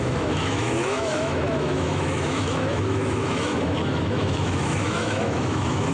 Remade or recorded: remade